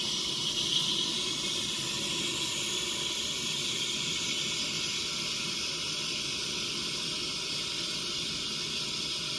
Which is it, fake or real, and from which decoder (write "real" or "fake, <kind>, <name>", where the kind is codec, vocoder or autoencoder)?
real